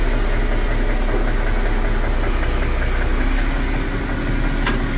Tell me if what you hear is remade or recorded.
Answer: recorded